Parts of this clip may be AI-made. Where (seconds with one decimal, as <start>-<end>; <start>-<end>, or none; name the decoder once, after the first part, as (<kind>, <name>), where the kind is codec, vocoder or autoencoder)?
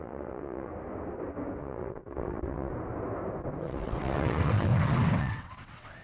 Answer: 0.0-0.7 (vocoder, WaveNeXt); 1.6-2.7; 3.6-4.7; 5.2-6.0